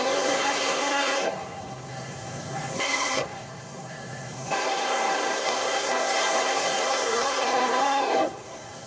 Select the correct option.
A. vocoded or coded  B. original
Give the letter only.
A